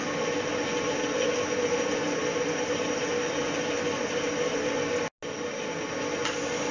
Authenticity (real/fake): real